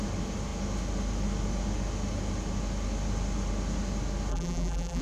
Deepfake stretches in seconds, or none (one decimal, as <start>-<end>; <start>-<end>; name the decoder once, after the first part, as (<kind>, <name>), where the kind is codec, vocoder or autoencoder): 4.3-5.0 (vocoder, BigVGAN v2)